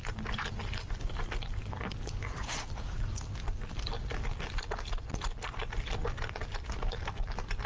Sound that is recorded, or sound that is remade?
recorded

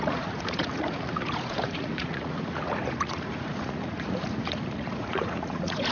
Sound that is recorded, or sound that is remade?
remade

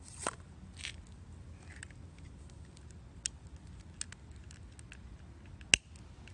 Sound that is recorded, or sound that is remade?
recorded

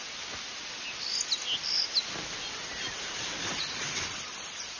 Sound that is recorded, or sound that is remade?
recorded